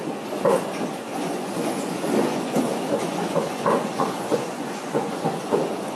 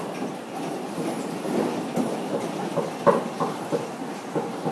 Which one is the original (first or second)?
second